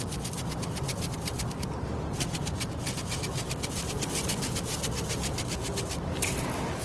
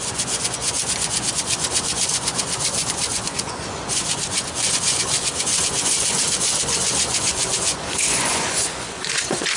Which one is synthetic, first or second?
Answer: second